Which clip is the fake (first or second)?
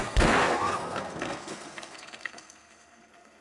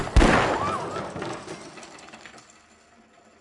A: first